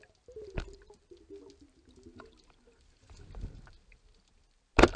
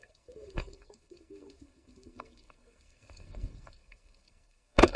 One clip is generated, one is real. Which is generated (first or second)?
second